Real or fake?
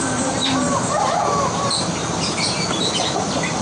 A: real